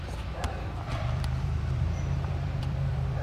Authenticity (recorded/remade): remade